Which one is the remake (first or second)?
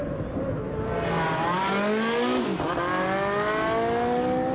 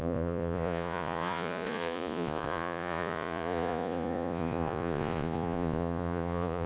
second